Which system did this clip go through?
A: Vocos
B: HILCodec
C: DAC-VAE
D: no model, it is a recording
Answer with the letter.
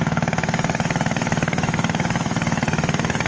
C